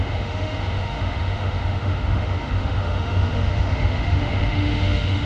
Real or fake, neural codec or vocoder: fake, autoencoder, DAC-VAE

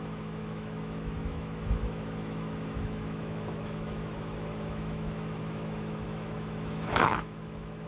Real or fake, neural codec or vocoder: fake, autoencoder, DAC-VAE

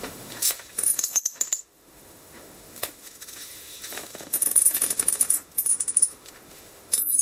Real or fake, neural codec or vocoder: fake, autoencoder, DAC-VAE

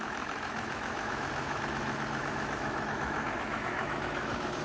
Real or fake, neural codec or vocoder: fake, autoencoder, DAC-VAE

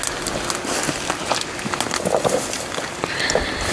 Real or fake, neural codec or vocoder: real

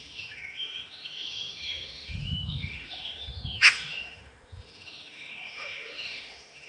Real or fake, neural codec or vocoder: fake, autoencoder, DAC-VAE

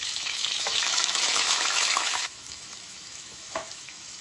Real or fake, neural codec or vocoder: fake, autoencoder, DAC-VAE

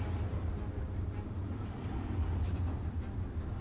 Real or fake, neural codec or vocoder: real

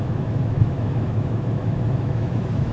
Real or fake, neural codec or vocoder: fake, autoencoder, DAC-VAE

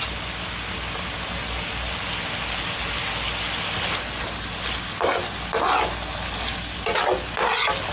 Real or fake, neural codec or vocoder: real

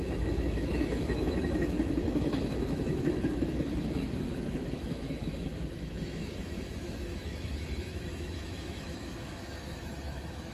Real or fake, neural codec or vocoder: fake, autoencoder, DAC-VAE